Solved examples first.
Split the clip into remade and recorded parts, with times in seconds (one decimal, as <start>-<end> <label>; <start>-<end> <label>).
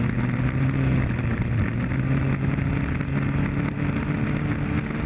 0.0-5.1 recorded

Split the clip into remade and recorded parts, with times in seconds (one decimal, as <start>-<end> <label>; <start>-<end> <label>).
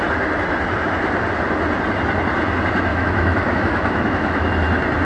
0.0-2.9 recorded; 2.9-4.5 remade; 4.5-5.0 recorded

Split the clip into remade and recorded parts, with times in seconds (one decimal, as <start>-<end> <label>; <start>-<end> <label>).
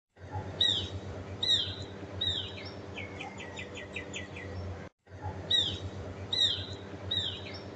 0.0-0.8 remade; 0.8-7.8 recorded